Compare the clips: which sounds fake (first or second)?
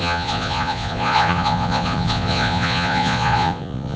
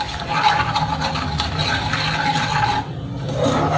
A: first